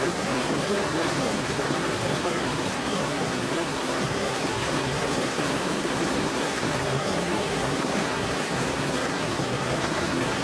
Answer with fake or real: fake